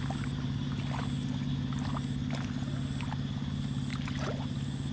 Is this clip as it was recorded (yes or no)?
yes